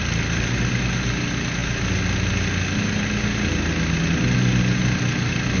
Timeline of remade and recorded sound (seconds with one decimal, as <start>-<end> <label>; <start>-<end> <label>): 0.0-5.6 recorded